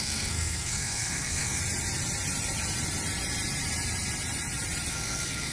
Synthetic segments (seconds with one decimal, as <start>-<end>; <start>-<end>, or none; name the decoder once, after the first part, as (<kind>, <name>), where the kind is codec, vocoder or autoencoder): 0.0-1.6 (codec, SNAC); 4.9-5.5